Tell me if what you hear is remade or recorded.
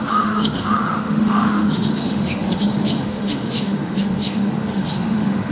remade